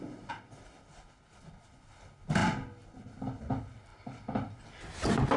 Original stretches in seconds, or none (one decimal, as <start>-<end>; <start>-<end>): 0.0-5.4